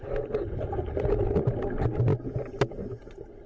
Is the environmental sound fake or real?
real